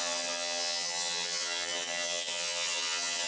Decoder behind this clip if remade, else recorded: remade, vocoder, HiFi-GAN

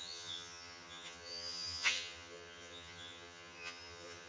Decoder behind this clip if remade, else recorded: remade, vocoder, HiFi-GAN